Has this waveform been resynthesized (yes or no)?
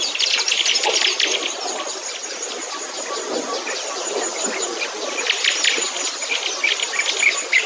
no